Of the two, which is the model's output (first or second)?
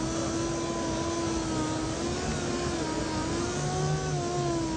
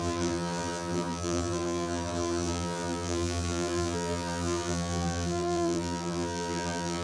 second